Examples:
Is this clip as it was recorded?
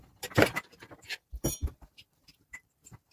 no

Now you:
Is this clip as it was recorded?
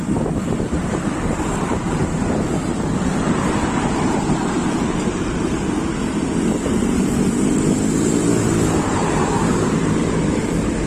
no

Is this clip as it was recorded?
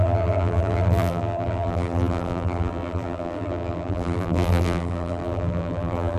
no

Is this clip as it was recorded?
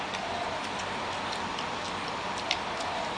yes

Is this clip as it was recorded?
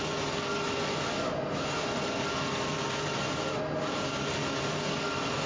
yes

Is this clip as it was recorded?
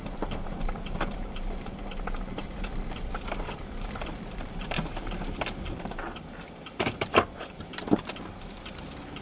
no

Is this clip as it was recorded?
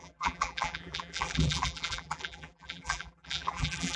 no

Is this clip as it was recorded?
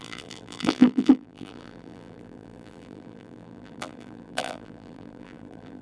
no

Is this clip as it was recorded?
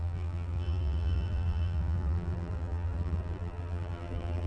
no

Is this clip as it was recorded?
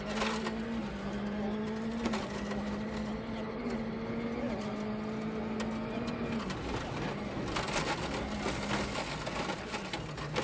yes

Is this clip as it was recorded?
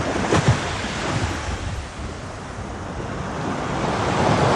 no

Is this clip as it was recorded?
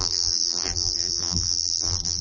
no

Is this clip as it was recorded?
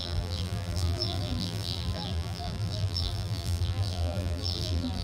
no